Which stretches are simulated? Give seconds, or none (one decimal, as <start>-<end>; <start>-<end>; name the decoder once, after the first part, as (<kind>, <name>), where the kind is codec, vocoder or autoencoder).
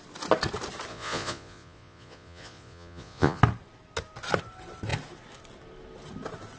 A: 0.9-3.4 (vocoder, Vocos)